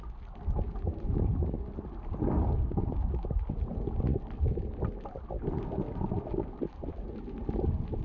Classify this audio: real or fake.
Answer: real